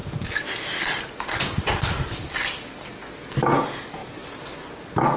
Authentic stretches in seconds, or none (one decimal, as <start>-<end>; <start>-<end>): 0.0-5.2